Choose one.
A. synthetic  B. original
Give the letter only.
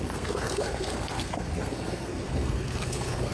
A